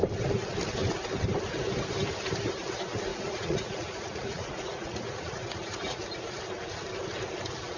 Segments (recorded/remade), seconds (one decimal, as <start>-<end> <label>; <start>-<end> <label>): 0.0-3.1 recorded; 3.1-6.4 remade; 6.4-7.8 recorded